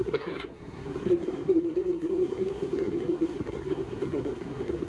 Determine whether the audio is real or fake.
fake